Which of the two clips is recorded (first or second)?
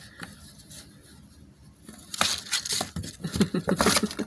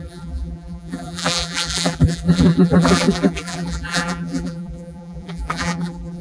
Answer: first